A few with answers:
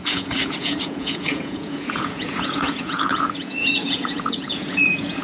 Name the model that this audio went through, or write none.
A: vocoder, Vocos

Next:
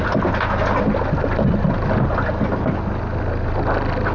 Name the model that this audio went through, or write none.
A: none